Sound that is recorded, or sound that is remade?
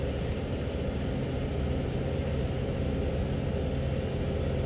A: recorded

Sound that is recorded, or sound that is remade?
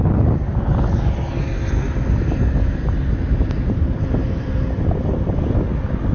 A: recorded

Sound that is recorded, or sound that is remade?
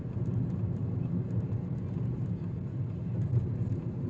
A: recorded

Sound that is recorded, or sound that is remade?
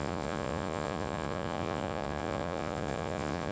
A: remade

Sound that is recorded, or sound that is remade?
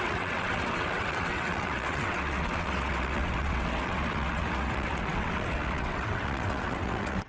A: remade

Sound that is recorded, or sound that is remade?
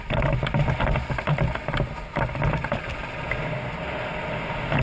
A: recorded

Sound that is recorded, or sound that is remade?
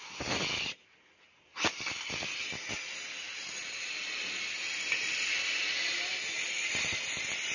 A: recorded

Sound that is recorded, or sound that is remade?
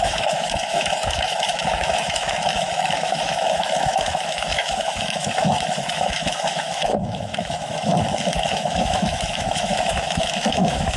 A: remade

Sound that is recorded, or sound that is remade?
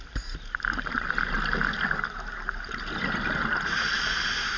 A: recorded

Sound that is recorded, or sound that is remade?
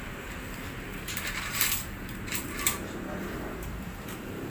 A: remade